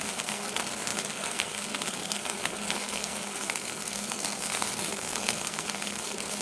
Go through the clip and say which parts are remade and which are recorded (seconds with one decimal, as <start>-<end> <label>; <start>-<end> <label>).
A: 0.0-6.4 remade